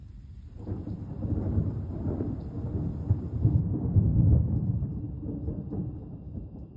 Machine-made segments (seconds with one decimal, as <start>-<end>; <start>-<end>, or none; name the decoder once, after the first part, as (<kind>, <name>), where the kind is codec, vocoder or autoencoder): 0.0-2.4 (vocoder, BigVGAN v2); 4.1-5.1; 5.8-6.8